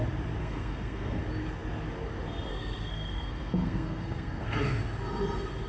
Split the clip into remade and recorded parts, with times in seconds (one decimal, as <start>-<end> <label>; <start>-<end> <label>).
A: 0.0-0.4 recorded; 0.4-1.2 remade; 1.2-2.5 recorded; 2.5-4.6 remade; 4.6-5.7 recorded